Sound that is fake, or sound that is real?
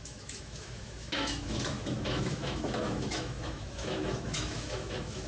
fake